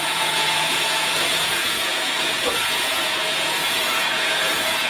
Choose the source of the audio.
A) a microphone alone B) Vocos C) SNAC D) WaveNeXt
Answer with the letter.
B